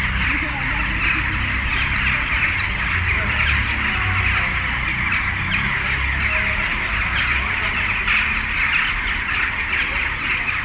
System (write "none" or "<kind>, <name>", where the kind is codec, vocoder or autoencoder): none